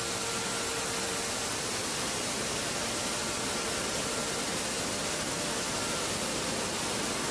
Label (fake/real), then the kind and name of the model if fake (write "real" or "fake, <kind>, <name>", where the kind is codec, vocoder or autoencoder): real